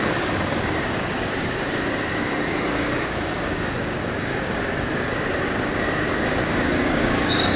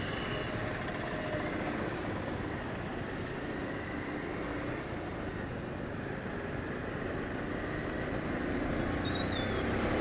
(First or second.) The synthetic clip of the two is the first